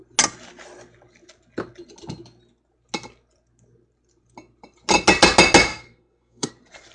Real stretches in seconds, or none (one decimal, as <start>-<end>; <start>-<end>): 0.0-5.7; 6.5-6.9